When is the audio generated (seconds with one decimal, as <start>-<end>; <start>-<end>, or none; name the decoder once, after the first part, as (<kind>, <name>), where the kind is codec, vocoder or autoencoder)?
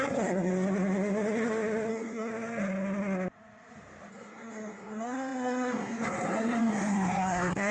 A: 0.0-0.5 (codec, SNAC); 1.9-2.3; 4.1-7.7